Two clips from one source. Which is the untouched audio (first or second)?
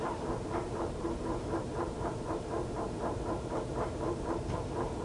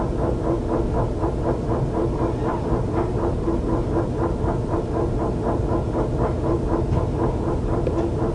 second